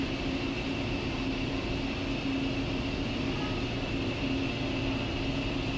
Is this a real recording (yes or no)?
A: yes